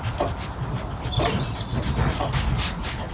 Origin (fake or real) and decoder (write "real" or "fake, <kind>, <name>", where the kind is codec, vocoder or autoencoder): real